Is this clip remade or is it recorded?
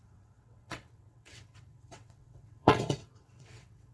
remade